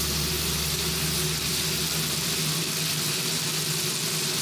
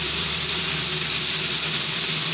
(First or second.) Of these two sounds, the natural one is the first